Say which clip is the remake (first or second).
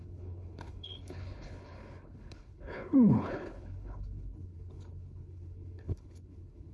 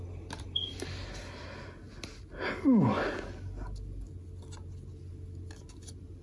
first